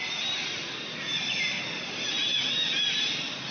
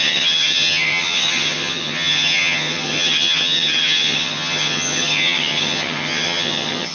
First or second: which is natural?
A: first